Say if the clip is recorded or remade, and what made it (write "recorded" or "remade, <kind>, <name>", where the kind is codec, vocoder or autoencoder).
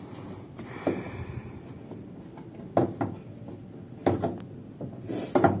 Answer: recorded